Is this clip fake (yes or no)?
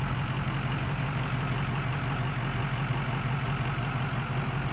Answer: no